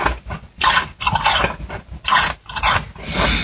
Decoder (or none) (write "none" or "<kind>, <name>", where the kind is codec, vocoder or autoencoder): none